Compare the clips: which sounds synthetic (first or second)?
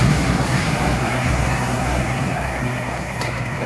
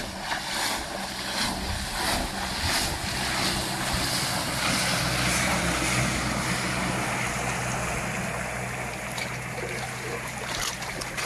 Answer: first